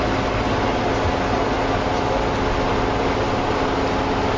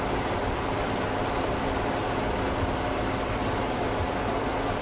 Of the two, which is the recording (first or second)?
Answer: first